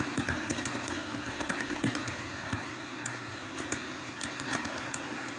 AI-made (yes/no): yes